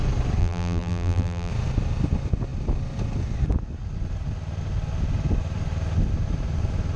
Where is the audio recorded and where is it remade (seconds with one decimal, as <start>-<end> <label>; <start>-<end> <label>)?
0.0-0.4 recorded; 0.4-1.5 remade; 1.5-7.0 recorded